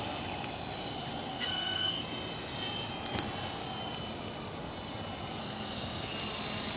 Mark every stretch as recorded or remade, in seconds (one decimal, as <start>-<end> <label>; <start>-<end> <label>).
0.0-1.3 recorded; 1.3-2.0 remade; 2.0-5.4 recorded; 5.4-6.1 remade; 6.1-6.8 recorded